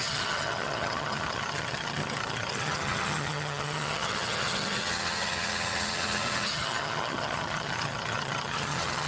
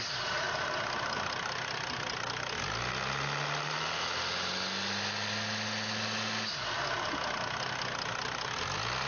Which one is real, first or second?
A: second